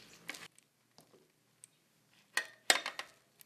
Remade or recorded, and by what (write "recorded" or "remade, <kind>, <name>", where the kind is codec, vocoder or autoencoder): recorded